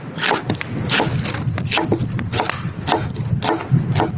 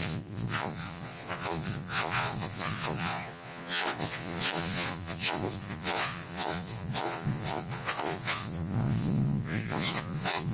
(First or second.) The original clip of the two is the first